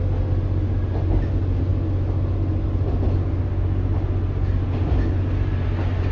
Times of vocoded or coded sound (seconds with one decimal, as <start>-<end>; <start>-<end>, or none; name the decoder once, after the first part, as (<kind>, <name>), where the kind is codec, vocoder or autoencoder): none